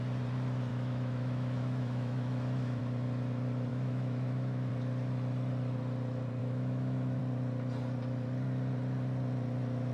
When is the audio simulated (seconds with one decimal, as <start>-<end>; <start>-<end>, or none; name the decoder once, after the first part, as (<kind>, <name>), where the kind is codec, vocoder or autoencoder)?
0.7-2.8 (autoencoder, DAC-VAE); 3.7-4.7; 6.4-7.2